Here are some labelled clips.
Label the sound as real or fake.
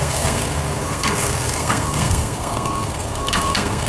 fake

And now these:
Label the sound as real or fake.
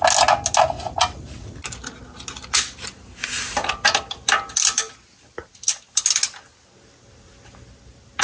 real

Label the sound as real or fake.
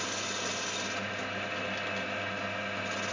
real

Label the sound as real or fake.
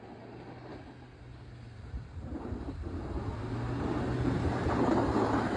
real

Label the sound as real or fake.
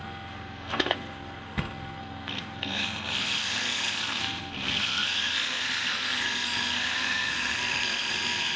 fake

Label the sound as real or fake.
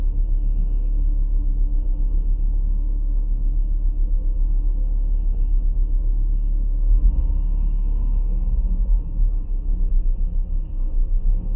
fake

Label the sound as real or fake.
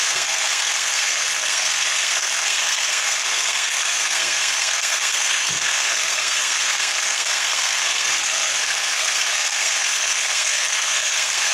fake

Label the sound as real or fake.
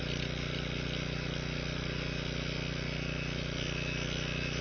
real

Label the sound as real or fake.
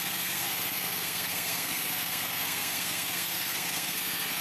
fake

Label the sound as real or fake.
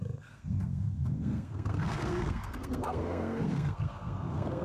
fake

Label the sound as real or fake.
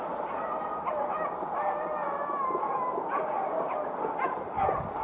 real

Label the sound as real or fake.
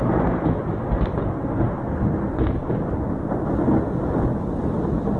real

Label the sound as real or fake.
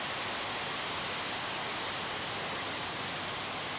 real